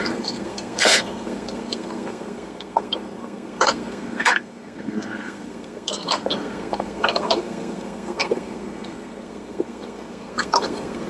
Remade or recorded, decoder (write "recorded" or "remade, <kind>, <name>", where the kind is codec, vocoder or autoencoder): remade, codec, SNAC